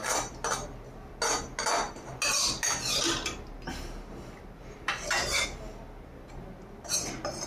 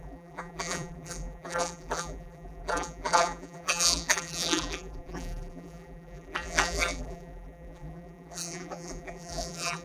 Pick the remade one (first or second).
second